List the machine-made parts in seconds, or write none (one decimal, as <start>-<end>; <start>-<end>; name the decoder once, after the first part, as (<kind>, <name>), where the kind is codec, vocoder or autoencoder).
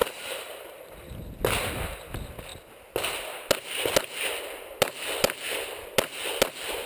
0.0-1.4 (vocoder, BigVGAN v2)